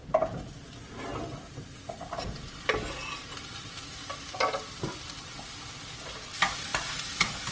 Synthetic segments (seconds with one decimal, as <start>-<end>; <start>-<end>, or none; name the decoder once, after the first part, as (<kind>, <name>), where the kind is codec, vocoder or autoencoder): none